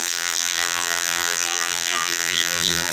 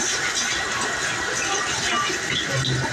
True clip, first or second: second